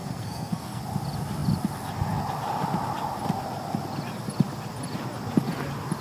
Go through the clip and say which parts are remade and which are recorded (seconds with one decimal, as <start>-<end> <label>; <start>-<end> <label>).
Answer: 0.0-0.8 remade; 0.8-6.0 recorded